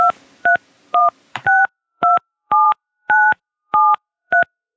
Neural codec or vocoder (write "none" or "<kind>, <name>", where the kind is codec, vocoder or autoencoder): vocoder, BigVGAN v2